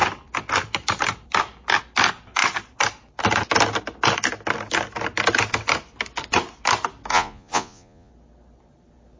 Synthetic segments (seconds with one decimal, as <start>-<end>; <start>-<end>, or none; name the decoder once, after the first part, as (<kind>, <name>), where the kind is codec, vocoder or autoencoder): 7.1-8.1 (vocoder, Vocos)